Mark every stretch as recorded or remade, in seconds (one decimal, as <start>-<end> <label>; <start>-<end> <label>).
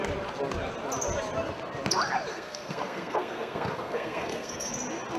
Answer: 0.0-2.3 recorded; 2.3-4.7 remade; 4.7-5.2 recorded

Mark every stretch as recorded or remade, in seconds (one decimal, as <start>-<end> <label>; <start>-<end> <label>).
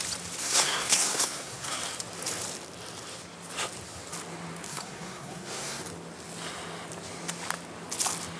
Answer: 0.0-0.4 recorded; 0.4-1.8 remade; 1.8-4.7 recorded; 4.7-5.8 remade; 5.8-8.4 recorded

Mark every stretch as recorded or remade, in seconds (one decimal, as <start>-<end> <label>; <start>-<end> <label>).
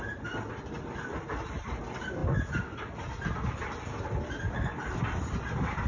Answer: 0.0-5.9 recorded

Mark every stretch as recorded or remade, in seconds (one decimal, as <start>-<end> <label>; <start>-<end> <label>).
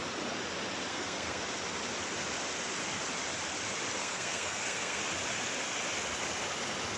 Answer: 0.0-0.9 recorded; 0.9-1.4 remade; 1.4-4.0 recorded; 4.0-5.0 remade; 5.0-7.0 recorded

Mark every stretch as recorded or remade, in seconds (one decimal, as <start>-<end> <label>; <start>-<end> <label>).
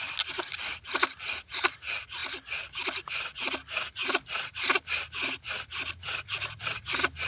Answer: 0.0-7.3 recorded